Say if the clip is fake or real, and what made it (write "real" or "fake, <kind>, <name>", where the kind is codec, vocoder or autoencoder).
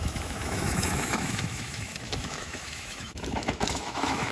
fake, autoencoder, DAC-VAE